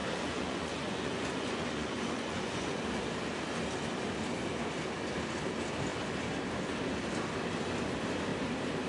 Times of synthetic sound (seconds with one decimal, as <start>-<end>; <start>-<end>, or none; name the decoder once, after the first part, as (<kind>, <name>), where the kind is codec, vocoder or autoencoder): 0.0-2.8 (vocoder, Vocos)